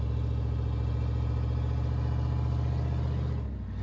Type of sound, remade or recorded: recorded